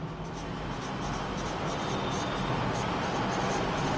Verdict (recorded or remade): recorded